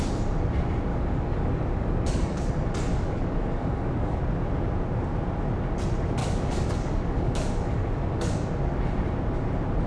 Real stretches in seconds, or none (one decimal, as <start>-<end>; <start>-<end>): 0.0-0.9; 2.5-2.9; 4.2-6.2; 8.5-9.9